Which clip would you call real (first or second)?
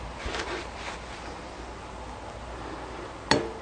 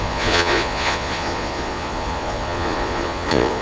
first